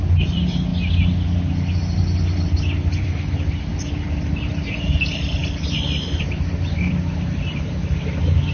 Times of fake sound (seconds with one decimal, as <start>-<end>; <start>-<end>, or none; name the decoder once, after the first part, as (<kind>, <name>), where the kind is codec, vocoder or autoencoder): 0.0-0.7 (vocoder, BigVGAN v2); 3.0-5.4; 6.2-8.5